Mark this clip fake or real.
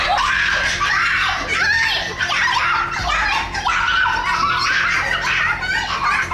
real